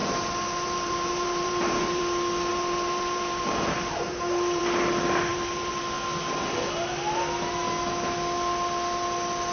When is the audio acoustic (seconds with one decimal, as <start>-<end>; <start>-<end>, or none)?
2.0-2.5; 4.6-5.3; 5.8-9.5